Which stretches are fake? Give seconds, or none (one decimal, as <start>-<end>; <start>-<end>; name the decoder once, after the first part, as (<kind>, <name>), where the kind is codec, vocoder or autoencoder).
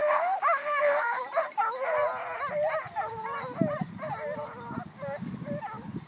0.0-1.2 (autoencoder, DAC-VAE)